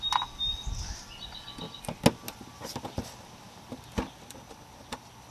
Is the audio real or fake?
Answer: real